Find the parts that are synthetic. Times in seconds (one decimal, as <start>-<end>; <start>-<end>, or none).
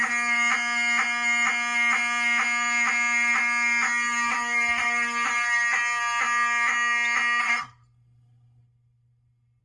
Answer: 7.4-9.6